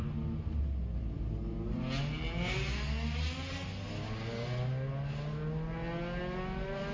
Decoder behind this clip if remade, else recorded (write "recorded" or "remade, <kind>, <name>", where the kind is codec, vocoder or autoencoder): recorded